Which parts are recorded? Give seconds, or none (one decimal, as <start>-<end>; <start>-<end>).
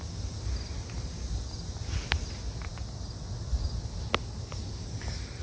0.0-5.4